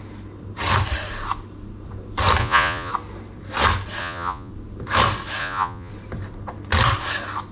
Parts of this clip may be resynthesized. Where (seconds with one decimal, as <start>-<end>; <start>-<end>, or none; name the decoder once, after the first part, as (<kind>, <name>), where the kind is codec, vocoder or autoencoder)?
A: 2.4-2.9 (vocoder, Vocos); 4.0-4.5; 5.4-5.9